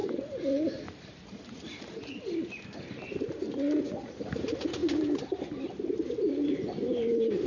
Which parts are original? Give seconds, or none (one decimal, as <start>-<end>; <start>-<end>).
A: none